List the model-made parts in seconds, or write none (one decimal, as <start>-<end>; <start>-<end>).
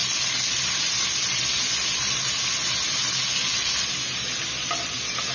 none